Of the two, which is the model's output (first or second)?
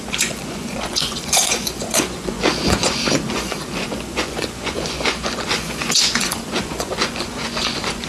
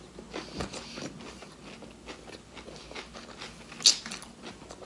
first